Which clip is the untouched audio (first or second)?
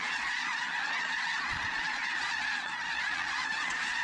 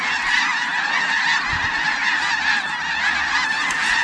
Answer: second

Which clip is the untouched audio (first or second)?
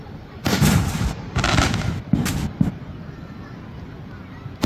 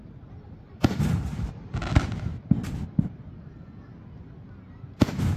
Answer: second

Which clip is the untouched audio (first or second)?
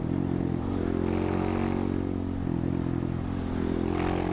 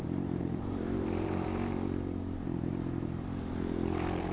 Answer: first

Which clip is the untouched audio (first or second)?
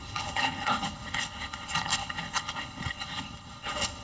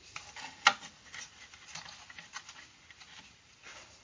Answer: second